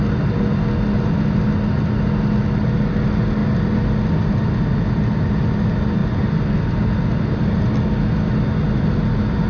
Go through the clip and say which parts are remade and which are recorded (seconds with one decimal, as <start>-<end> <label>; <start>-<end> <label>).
0.0-9.5 recorded